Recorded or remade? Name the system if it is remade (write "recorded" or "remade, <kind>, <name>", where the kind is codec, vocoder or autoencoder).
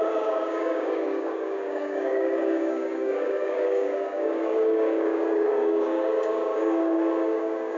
remade, codec, DAC